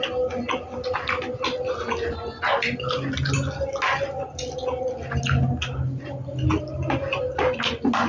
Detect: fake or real real